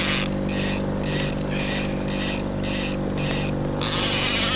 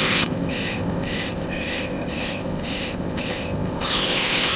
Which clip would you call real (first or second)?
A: first